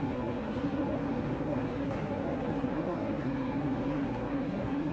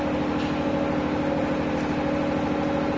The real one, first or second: second